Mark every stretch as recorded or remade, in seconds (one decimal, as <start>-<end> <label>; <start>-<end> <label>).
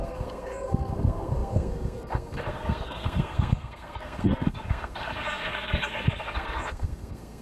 0.0-7.4 remade